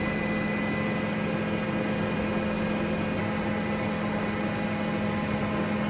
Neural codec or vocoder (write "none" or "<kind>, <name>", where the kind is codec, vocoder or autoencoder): none